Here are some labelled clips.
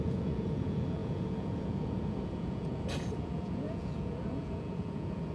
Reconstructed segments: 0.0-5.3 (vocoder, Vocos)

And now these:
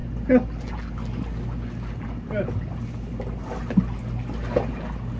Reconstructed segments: none

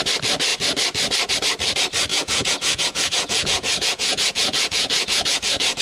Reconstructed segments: 2.1-5.8 (vocoder, Vocos)